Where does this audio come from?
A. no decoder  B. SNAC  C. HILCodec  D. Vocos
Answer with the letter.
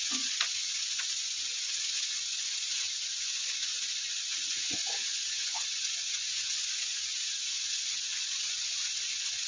D